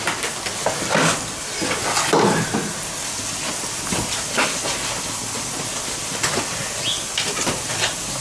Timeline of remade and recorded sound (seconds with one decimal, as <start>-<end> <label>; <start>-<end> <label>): 0.0-8.2 recorded